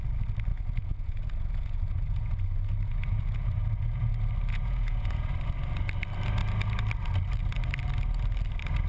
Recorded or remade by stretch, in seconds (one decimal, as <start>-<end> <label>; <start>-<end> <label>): 0.0-0.5 recorded; 0.5-4.1 remade; 4.1-4.5 recorded; 4.5-5.3 remade; 5.3-8.9 recorded

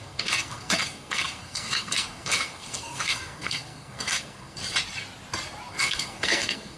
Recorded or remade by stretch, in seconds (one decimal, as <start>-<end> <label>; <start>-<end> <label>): 0.0-4.6 remade; 4.6-5.7 recorded; 5.7-6.8 remade

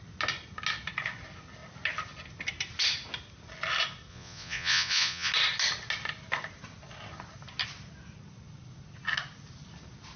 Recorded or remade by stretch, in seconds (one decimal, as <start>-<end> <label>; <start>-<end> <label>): 0.0-4.1 recorded; 4.1-5.3 remade; 5.3-10.2 recorded

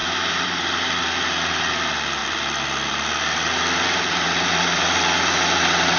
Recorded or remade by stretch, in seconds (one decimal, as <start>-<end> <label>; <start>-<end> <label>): 0.0-0.9 remade; 0.9-2.2 recorded; 2.2-6.0 remade

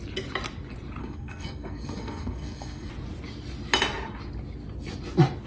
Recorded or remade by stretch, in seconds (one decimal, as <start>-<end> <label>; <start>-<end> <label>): 0.0-1.0 recorded; 1.0-2.9 remade; 2.9-5.5 recorded

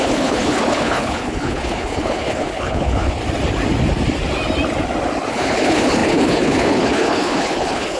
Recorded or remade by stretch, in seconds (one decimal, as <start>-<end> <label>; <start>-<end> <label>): 0.0-3.2 remade; 3.2-5.3 recorded; 5.3-8.0 remade

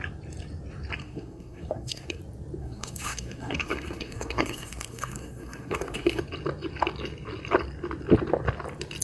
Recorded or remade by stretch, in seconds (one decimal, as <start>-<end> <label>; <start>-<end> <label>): 0.0-1.0 recorded; 1.0-2.2 remade; 2.2-2.6 recorded; 2.6-6.2 remade; 6.2-9.0 recorded

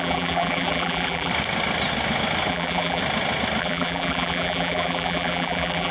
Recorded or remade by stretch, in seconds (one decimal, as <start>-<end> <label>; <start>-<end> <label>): 0.0-1.3 remade; 1.3-2.5 recorded; 2.5-3.0 remade; 3.0-3.6 recorded; 3.6-5.9 remade